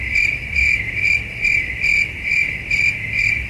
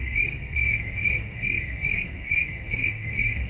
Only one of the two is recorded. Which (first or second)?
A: first